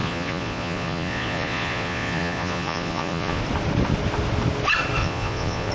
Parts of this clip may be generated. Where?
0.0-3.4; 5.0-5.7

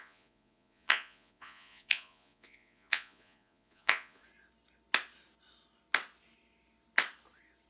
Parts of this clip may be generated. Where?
0.0-4.2

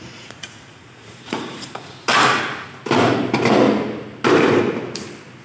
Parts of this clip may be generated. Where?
0.0-2.1

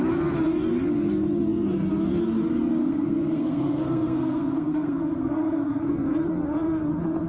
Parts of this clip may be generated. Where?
2.8-5.9

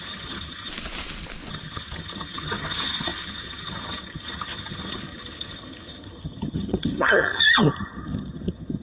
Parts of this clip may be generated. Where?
0.0-0.7; 1.5-8.8

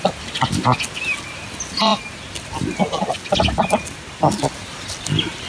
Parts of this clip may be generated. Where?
none

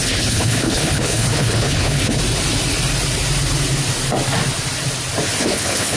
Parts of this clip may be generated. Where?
0.0-2.2; 5.4-6.0